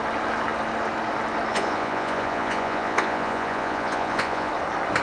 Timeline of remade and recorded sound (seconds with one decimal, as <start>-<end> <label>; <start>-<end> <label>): 0.0-1.5 recorded; 1.5-4.5 remade; 4.5-5.0 recorded